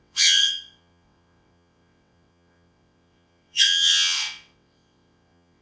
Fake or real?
fake